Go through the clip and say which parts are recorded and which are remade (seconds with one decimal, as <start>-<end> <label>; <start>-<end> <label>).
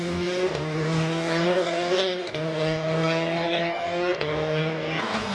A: 0.0-5.3 remade